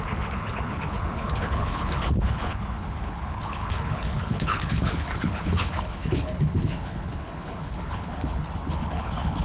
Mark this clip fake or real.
fake